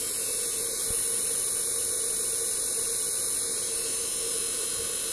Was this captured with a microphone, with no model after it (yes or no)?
no